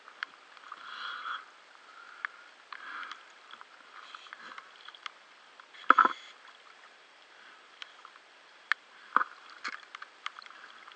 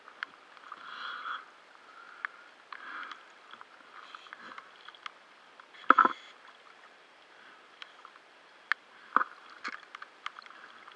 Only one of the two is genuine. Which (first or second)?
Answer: second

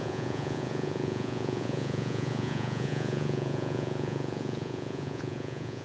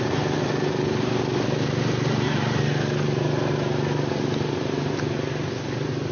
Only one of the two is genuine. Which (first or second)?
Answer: second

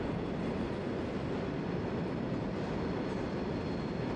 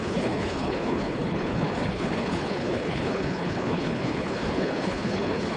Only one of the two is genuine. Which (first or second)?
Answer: first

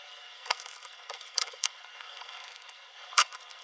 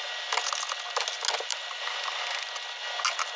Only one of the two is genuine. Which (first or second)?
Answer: second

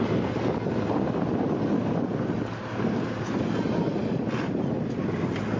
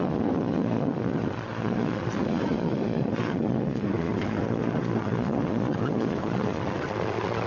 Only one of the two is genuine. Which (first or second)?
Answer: first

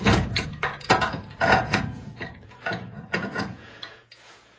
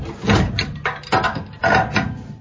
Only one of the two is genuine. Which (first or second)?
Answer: second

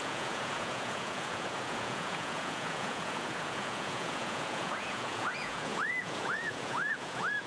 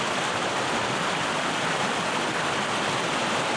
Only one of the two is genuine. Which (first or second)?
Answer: second